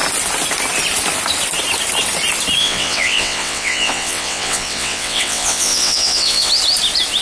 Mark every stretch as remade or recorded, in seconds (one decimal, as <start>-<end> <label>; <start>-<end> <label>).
0.0-2.6 recorded; 2.6-6.5 remade; 6.5-7.2 recorded